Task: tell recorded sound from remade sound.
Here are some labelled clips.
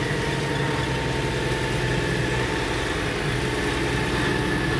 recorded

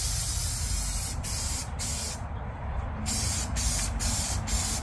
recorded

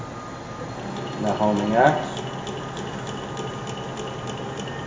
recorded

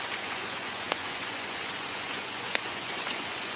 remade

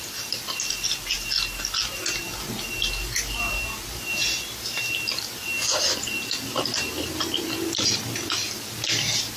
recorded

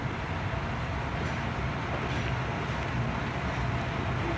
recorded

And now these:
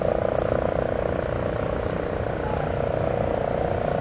recorded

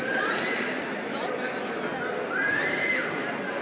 recorded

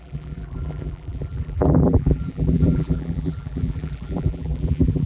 remade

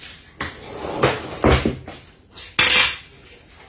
recorded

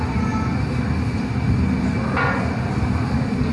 recorded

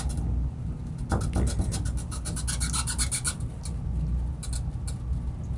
recorded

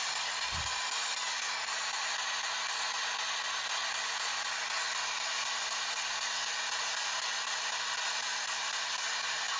recorded